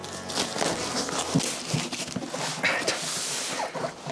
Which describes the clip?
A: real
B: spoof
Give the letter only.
A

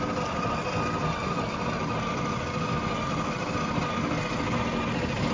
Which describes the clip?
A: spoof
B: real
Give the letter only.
B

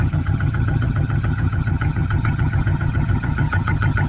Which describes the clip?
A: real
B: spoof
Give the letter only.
B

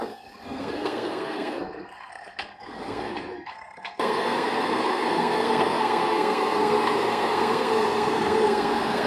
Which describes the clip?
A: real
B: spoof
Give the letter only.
B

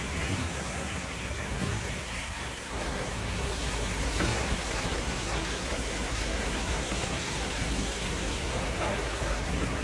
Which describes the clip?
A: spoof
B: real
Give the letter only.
A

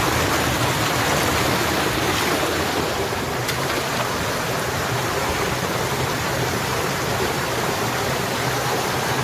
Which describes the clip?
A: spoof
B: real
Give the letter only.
B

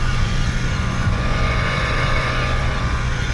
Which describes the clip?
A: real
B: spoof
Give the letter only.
B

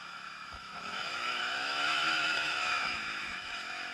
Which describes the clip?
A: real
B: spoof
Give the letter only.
B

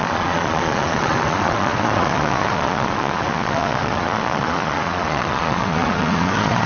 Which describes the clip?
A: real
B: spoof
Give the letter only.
B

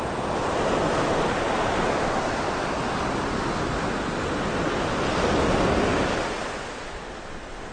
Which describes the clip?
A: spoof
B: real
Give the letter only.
B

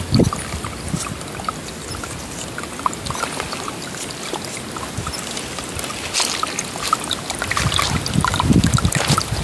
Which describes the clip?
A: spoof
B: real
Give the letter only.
B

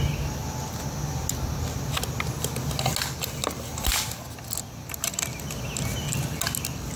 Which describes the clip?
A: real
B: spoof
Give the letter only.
A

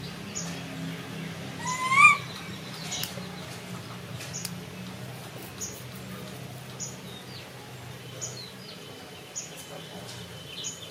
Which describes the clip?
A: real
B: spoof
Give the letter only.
A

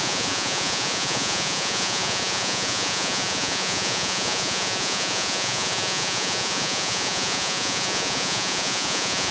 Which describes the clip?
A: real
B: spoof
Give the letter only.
B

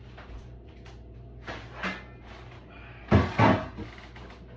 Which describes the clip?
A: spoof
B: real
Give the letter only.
B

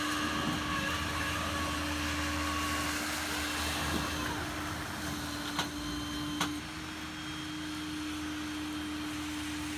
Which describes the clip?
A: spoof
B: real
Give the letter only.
B